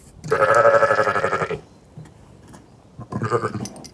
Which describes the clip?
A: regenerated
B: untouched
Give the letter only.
B